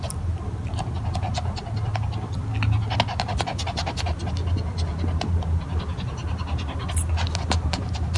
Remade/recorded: recorded